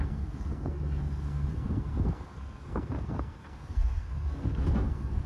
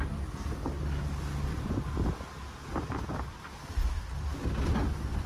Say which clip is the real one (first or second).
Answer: second